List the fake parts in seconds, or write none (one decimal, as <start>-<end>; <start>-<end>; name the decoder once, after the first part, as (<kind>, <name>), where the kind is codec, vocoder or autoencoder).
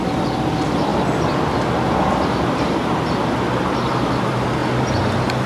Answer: none